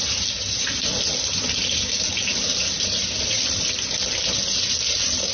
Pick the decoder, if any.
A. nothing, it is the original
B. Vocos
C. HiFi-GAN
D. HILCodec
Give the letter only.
A